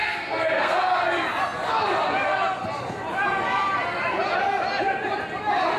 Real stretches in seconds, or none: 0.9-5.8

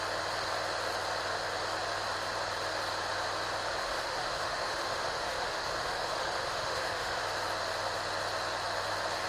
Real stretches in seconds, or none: 0.0-3.7; 7.2-9.3

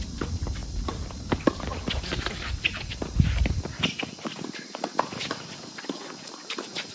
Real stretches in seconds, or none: 0.0-6.9

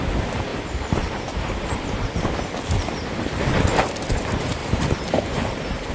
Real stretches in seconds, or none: 0.0-0.5; 2.1-4.6